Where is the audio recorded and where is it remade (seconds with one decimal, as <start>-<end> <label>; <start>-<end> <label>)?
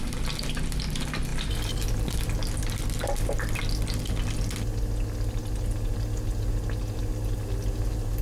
0.0-8.2 recorded